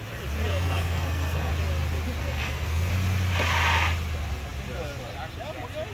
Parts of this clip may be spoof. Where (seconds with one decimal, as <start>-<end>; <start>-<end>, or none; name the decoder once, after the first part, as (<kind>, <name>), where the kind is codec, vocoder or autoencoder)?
0.5-1.5 (codec, SNAC); 2.2-2.9